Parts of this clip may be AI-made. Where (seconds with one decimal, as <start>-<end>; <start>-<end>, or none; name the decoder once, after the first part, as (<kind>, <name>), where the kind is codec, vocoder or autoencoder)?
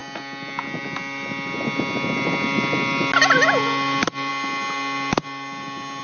none